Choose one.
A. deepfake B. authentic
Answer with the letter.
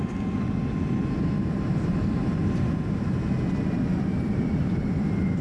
A